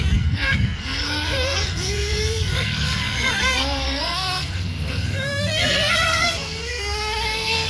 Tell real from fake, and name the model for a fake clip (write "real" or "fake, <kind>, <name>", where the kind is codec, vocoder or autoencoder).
fake, codec, SNAC